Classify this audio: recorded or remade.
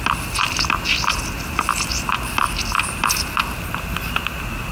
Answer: recorded